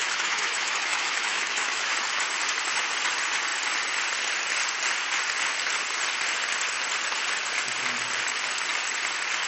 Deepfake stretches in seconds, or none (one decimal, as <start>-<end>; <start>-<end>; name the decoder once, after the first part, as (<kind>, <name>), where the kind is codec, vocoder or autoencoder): 0.0-1.9 (autoencoder, DAC-VAE)